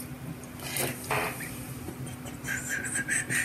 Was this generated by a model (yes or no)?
no